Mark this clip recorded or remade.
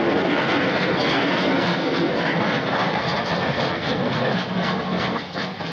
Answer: remade